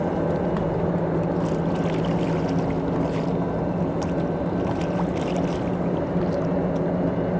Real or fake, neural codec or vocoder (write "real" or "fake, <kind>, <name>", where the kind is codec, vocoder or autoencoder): real